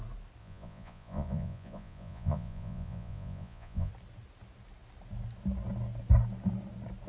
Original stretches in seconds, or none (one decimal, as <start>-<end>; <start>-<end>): 0.0-0.4; 3.9-7.1